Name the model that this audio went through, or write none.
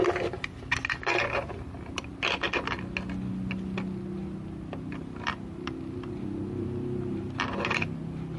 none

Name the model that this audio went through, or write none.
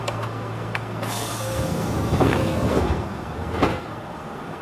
codec, SNAC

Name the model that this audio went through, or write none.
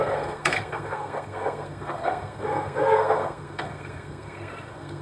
codec, SNAC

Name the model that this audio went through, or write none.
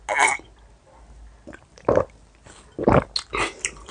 none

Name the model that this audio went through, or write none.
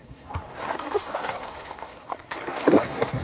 codec, SNAC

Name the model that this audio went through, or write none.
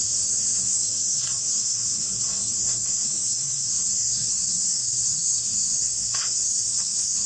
codec, SNAC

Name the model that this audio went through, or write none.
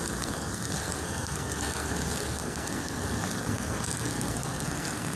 codec, SNAC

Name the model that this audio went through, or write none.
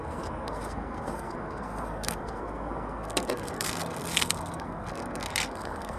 codec, SNAC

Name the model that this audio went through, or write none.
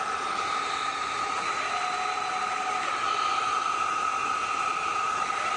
none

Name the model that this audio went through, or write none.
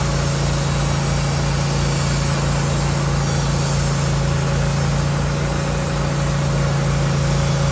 none